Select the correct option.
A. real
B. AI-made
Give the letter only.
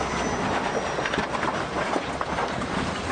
A